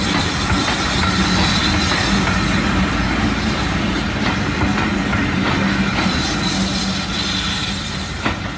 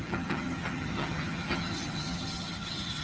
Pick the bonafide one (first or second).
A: first